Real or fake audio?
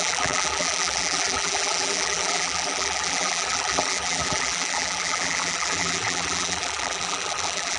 fake